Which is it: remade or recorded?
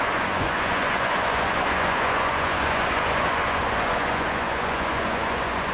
remade